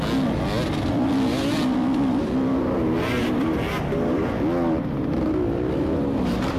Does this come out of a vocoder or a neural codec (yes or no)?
no